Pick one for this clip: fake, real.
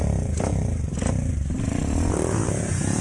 fake